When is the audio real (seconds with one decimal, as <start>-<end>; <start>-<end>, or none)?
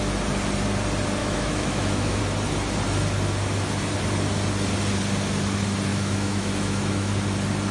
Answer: 0.0-1.2; 2.2-5.9; 7.1-7.7